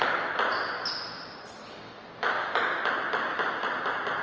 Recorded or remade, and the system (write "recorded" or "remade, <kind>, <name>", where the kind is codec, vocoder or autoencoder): recorded